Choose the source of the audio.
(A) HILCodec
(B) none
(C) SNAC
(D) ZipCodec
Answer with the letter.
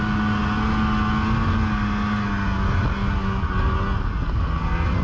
B